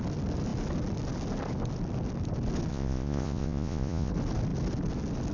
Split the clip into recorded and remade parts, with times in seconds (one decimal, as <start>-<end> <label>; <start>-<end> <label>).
0.0-2.7 recorded; 2.7-4.1 remade; 4.1-5.3 recorded